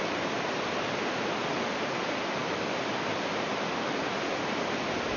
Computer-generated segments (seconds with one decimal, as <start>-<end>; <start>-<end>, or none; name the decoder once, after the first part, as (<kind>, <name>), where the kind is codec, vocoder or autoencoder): none